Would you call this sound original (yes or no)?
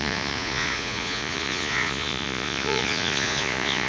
no